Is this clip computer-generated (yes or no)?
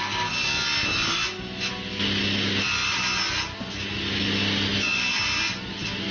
no